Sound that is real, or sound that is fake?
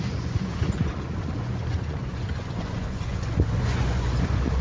fake